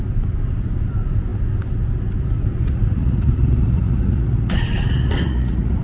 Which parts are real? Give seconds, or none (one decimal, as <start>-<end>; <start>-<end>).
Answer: 0.0-2.6